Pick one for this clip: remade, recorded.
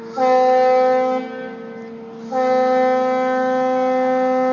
recorded